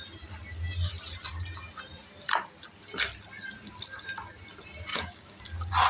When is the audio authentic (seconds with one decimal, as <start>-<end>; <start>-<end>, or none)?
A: 0.0-4.9; 5.4-5.9